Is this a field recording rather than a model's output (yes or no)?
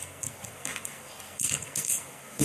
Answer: no